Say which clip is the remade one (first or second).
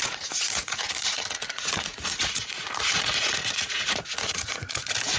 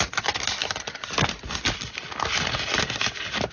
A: first